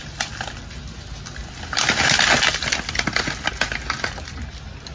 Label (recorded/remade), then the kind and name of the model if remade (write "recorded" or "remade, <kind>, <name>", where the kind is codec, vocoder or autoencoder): recorded